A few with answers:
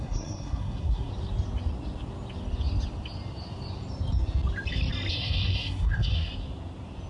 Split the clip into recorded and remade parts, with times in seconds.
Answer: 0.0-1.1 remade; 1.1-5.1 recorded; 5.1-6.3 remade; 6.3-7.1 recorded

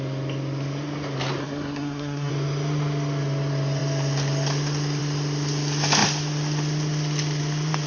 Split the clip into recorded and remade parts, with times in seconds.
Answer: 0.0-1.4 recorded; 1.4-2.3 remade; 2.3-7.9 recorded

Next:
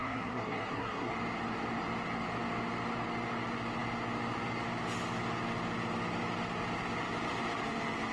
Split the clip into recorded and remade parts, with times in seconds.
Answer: 0.0-1.1 remade; 1.1-8.1 recorded

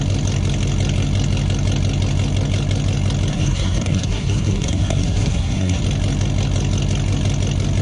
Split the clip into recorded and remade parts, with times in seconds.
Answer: 0.0-3.3 recorded; 3.3-5.8 remade; 5.8-7.8 recorded

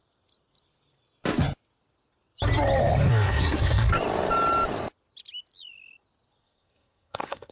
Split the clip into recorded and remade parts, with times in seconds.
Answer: 0.0-3.1 recorded; 3.1-3.9 remade; 3.9-6.4 recorded; 6.4-7.5 remade

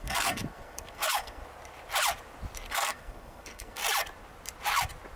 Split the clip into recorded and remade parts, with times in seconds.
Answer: 0.0-1.4 remade; 1.4-2.7 recorded; 2.7-3.8 remade; 3.8-5.2 recorded